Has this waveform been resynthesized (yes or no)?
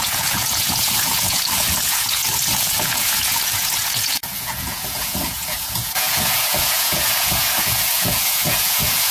yes